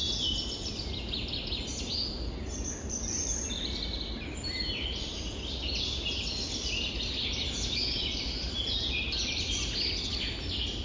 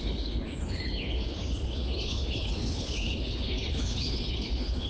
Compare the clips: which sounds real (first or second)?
first